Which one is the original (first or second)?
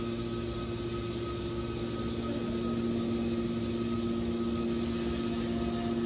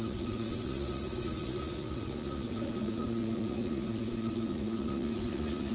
first